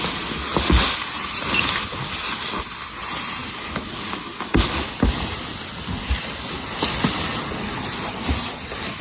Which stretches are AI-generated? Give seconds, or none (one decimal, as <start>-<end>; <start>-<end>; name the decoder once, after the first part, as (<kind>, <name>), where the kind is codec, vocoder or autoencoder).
none

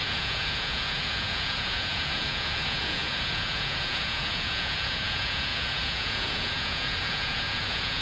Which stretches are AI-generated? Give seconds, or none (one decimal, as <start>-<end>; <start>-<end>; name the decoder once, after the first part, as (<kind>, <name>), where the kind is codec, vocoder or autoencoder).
0.0-8.0 (vocoder, Vocos)

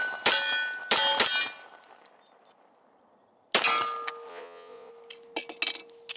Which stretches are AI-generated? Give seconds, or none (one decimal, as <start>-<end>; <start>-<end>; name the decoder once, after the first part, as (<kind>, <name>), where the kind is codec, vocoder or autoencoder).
4.3-4.9 (vocoder, Vocos)

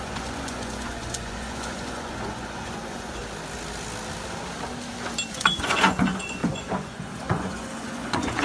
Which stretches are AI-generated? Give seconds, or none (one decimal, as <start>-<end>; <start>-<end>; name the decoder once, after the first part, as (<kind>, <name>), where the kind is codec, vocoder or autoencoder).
0.0-3.2 (vocoder, Vocos); 5.3-8.4

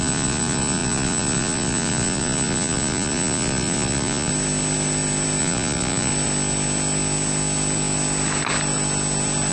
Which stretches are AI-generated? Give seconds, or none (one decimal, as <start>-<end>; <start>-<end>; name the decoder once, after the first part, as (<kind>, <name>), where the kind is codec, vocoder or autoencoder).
0.0-4.3 (vocoder, Vocos); 5.4-6.1